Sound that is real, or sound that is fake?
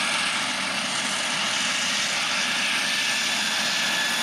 real